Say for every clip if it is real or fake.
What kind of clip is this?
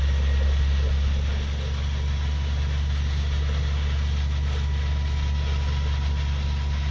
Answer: real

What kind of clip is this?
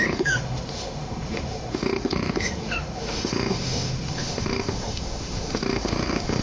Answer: fake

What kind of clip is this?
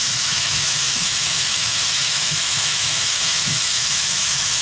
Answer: fake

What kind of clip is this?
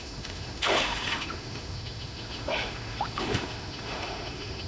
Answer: fake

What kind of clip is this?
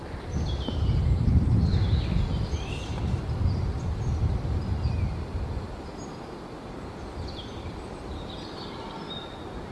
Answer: real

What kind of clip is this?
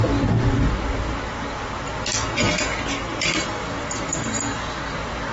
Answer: real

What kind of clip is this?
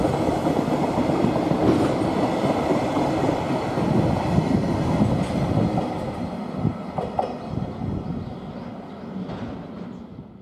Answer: real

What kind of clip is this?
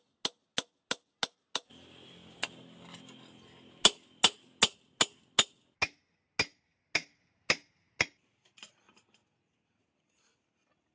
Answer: real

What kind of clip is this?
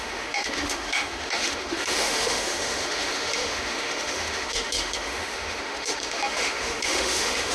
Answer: fake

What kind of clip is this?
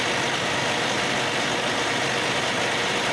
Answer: real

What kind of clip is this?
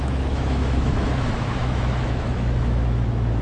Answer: fake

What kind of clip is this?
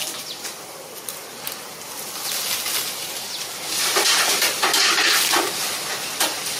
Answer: real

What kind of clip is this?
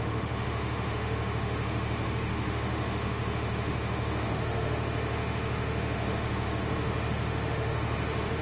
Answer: fake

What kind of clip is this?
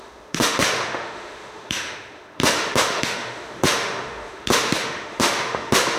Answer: fake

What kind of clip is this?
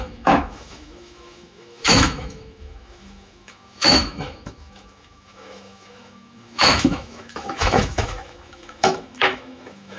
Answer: fake